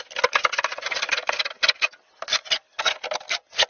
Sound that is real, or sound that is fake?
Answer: real